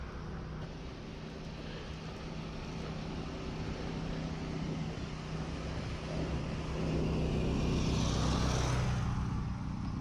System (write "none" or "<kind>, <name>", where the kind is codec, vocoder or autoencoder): none